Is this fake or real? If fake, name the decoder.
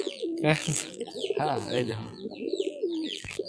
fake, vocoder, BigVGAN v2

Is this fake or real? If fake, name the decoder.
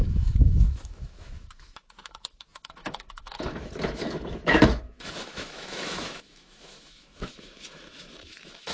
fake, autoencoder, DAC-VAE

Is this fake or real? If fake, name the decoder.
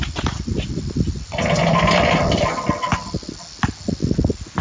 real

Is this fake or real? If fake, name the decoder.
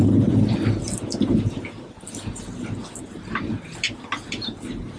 real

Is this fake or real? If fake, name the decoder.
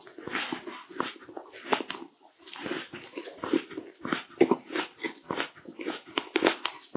real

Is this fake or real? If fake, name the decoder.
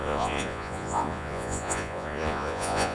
fake, vocoder, Vocos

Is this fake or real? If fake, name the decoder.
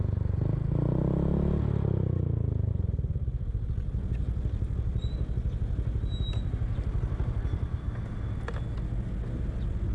real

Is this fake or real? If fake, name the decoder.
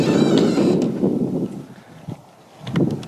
real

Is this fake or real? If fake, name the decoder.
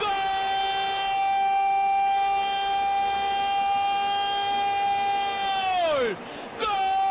real